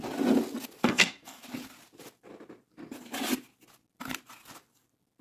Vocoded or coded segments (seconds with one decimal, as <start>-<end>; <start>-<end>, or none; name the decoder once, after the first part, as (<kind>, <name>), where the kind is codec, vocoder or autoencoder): 0.8-1.4 (codec, SNAC)